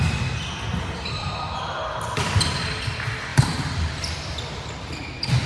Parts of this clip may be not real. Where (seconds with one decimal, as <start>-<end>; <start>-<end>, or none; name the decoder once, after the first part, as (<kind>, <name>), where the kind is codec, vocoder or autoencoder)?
1.2-2.8 (vocoder, BigVGAN v2); 3.3-4.9